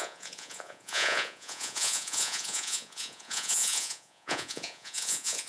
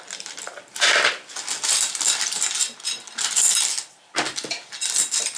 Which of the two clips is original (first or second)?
second